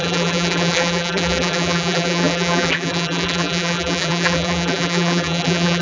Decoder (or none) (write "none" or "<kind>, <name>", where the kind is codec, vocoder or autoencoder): vocoder, BigVGAN v2